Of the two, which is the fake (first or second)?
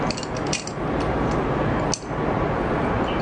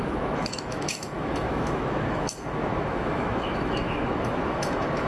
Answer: second